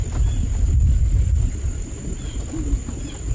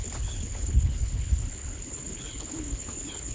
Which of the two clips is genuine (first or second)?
first